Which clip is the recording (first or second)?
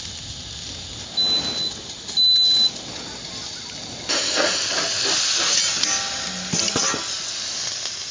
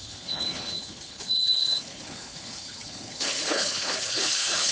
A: first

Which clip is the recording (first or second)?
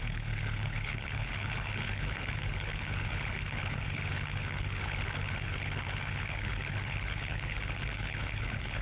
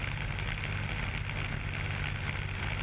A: second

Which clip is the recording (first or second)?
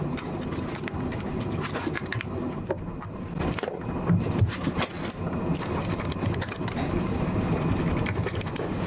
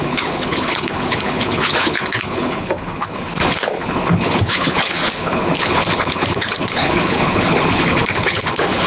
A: first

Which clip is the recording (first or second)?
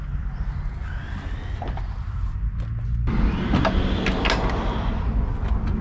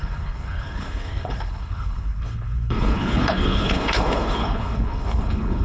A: first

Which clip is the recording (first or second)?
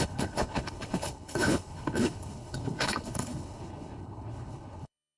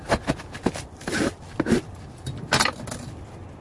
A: second